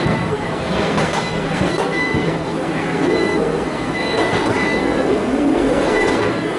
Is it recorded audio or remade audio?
remade